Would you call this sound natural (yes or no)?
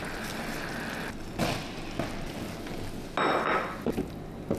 yes